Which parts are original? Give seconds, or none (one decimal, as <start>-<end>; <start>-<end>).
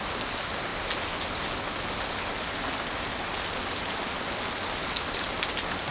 0.0-5.9